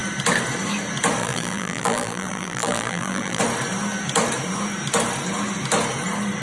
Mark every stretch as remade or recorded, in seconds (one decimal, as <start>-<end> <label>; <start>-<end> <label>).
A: 0.0-1.2 recorded; 1.2-3.4 remade; 3.4-6.4 recorded